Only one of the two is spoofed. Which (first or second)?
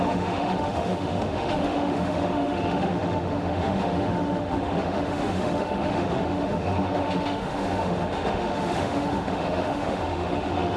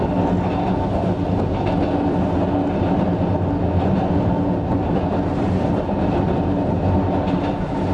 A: first